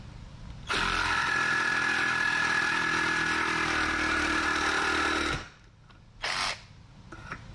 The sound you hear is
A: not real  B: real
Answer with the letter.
B